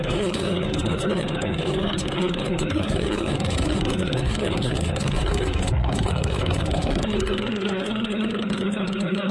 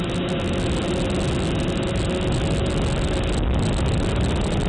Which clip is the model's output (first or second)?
first